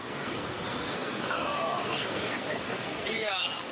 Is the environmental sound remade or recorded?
remade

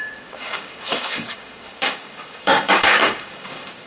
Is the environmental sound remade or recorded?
remade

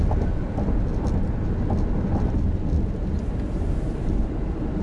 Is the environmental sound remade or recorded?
recorded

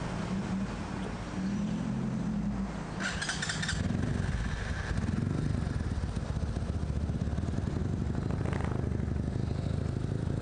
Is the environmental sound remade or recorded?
recorded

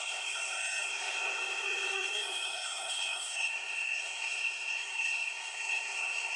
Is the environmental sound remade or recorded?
remade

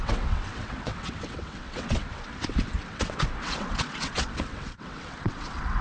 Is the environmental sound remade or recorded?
remade